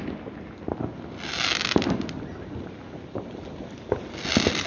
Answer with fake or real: real